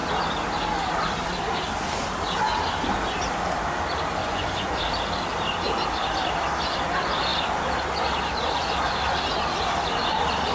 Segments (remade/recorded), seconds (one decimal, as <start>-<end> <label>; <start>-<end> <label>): 0.0-4.2 recorded; 4.2-4.8 remade; 4.8-10.5 recorded